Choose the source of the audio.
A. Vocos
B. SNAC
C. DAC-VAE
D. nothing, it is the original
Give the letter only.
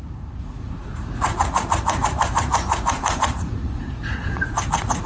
A